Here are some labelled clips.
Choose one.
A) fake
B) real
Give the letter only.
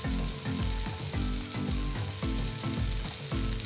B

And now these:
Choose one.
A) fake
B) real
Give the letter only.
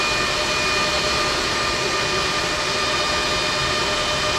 B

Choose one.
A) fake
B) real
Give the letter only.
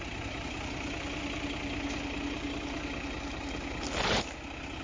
B